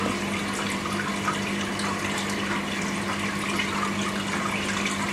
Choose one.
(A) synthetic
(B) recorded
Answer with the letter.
B